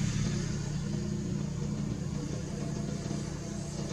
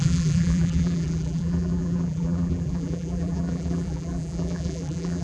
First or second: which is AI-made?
second